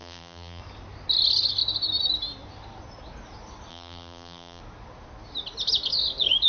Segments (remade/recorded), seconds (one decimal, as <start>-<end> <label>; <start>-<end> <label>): 0.0-0.6 remade; 0.6-3.7 recorded; 3.7-4.6 remade; 4.6-6.5 recorded